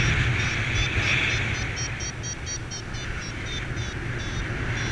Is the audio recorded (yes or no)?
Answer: yes